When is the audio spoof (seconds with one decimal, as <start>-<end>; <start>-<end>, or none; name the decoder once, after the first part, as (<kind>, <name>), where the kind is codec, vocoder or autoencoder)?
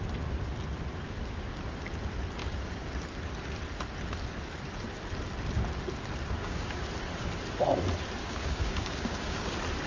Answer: 2.4-2.9 (codec, DAC); 6.2-6.8; 8.2-9.5